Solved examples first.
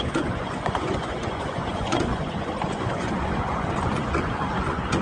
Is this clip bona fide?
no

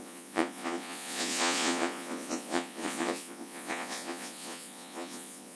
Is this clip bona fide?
no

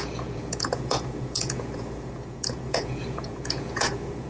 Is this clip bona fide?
no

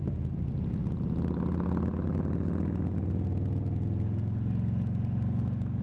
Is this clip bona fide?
yes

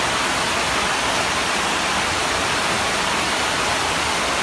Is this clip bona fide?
yes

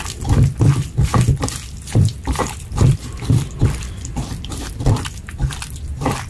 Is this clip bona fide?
yes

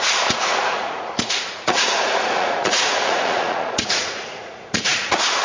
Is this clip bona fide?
no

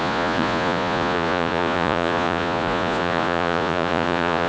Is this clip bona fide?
no